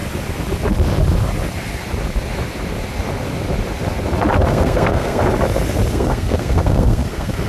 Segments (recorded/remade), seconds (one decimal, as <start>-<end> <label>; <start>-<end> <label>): 0.0-4.5 recorded; 4.5-5.2 remade; 5.2-5.9 recorded; 5.9-7.5 remade